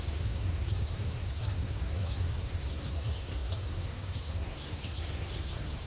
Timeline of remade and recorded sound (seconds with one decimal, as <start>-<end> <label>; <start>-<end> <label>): 0.0-5.9 remade